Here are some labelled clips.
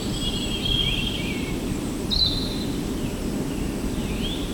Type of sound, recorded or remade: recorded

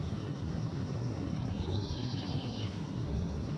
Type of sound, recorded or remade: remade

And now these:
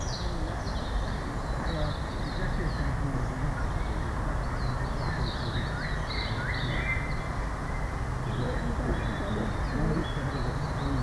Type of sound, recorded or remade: recorded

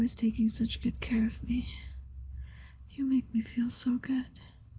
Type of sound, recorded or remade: remade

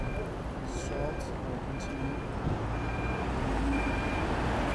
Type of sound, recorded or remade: recorded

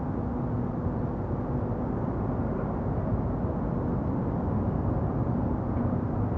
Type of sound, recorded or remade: recorded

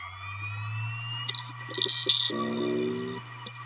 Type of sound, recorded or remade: recorded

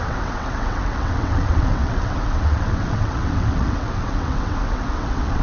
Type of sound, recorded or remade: remade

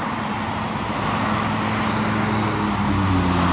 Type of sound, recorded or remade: recorded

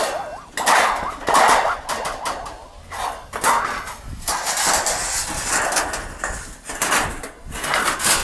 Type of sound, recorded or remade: recorded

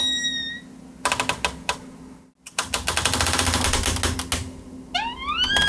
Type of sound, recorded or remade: recorded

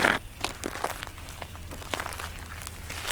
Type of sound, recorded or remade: recorded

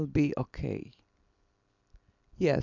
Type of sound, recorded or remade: recorded